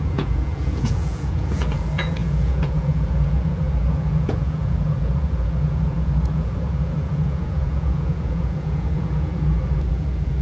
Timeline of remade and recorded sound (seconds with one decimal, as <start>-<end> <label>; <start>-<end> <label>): 0.0-10.4 remade